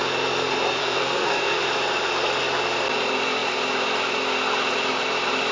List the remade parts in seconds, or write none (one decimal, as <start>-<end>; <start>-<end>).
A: 0.8-1.6